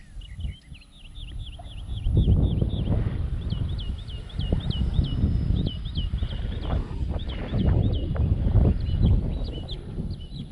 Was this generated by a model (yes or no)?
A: no